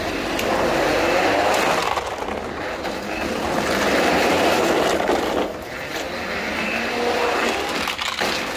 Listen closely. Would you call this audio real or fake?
real